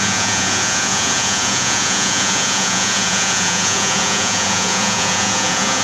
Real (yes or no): no